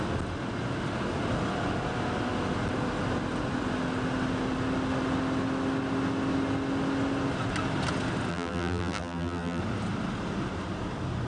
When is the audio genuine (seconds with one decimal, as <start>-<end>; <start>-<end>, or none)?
0.0-8.3; 9.6-11.3